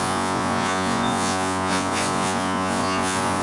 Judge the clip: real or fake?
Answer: fake